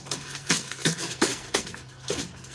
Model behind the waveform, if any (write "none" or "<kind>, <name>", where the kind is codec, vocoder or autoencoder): codec, SNAC